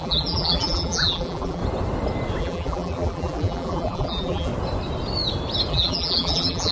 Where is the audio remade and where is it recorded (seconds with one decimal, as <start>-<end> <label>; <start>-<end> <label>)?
0.0-1.6 remade; 1.6-2.4 recorded; 2.4-4.5 remade; 4.5-5.7 recorded; 5.7-6.7 remade

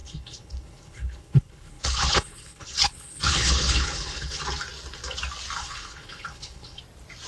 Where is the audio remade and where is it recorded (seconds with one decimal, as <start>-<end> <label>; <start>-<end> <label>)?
0.0-4.4 remade; 4.4-5.6 recorded; 5.6-6.8 remade; 6.8-7.3 recorded

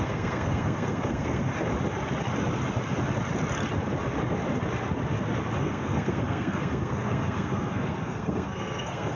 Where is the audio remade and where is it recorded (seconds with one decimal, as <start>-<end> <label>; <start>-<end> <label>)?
0.0-1.5 remade; 1.5-5.6 recorded; 5.6-9.2 remade

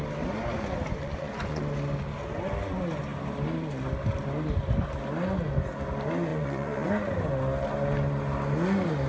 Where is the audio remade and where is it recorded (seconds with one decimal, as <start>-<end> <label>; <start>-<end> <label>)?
0.0-0.9 recorded; 0.9-1.6 remade; 1.6-6.3 recorded; 6.3-6.9 remade; 6.9-9.1 recorded

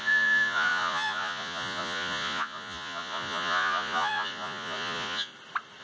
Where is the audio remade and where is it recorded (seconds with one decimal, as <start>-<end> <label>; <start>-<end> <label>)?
0.0-5.3 remade; 5.3-5.8 recorded

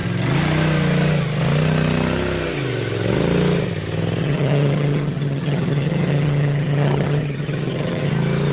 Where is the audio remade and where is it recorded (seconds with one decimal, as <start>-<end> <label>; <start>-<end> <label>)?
0.0-4.2 recorded; 4.2-8.1 remade; 8.1-8.5 recorded